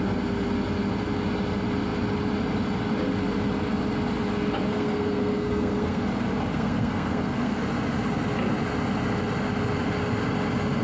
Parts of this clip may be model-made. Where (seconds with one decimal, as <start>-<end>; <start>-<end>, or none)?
4.7-6.0; 6.5-7.6